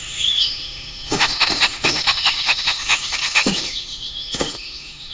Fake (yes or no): yes